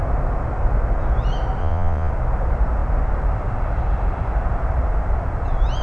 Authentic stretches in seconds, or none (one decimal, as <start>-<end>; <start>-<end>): 0.0-1.6; 2.1-5.8